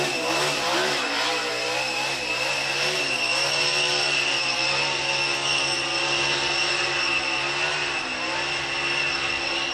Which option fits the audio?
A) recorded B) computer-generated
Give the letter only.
A